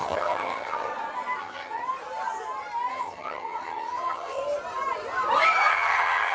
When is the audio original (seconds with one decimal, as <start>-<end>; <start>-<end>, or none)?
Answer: 0.9-1.4; 1.8-2.9; 4.4-5.7